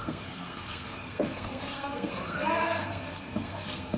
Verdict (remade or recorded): remade